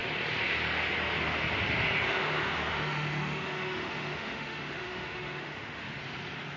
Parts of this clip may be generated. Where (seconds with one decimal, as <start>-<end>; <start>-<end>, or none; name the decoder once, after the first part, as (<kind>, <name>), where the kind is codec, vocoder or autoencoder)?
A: 2.7-6.0 (autoencoder, DAC-VAE)